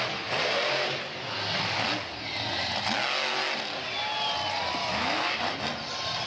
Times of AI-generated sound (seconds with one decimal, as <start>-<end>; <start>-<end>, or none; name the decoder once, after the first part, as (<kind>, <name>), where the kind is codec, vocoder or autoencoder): 4.8-5.3 (autoencoder, DAC-VAE)